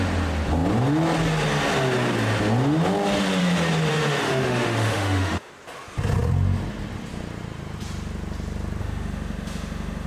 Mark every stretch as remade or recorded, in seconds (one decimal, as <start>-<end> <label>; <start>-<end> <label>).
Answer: 0.0-3.9 recorded; 3.9-5.5 remade; 5.5-8.8 recorded; 8.8-10.1 remade